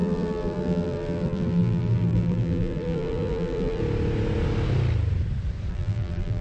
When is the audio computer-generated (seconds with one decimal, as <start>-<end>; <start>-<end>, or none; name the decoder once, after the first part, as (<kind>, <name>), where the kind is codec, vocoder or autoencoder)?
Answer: 0.0-3.8 (vocoder, BigVGAN v2); 5.7-6.4